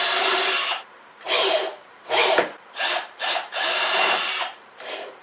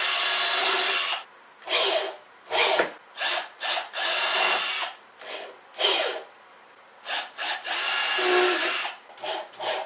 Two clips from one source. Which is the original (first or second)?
second